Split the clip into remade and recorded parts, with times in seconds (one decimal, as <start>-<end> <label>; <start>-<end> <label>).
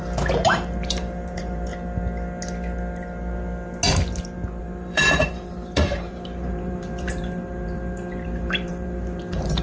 0.0-0.5 recorded; 0.5-1.7 remade; 1.7-4.6 recorded; 4.6-9.6 remade